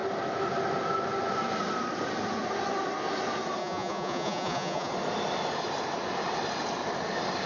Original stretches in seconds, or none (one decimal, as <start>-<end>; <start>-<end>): 0.0-3.6; 4.9-7.5